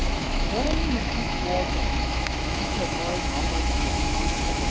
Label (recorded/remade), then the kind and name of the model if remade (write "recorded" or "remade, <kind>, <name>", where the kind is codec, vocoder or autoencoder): remade, autoencoder, DAC-VAE